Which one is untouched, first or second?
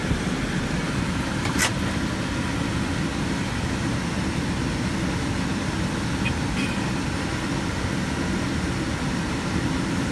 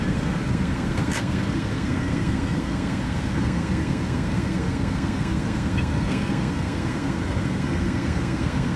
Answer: first